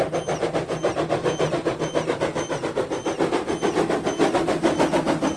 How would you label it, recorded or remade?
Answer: recorded